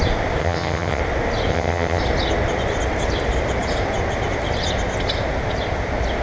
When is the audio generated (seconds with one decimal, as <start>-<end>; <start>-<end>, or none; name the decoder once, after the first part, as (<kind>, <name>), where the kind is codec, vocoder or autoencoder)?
0.4-1.0 (vocoder, HiFi-GAN); 1.5-2.0